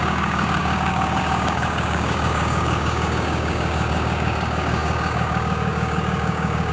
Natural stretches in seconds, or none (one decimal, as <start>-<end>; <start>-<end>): none